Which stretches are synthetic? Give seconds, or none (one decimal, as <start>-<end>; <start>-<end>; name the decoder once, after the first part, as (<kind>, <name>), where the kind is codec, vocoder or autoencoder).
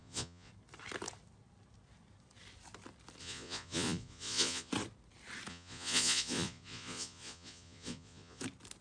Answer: 0.0-0.5 (vocoder, Vocos); 3.2-4.7; 5.5-8.4